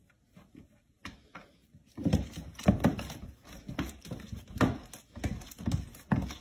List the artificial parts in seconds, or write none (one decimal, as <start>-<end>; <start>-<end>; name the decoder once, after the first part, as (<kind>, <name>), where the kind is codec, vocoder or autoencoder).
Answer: none